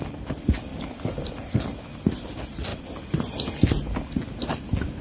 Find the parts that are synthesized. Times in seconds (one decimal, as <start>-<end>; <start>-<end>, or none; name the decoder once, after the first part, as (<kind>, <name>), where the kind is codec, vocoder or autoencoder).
0.7-1.8 (vocoder, BigVGAN v2); 2.7-3.5